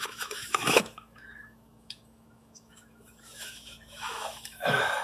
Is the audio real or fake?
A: fake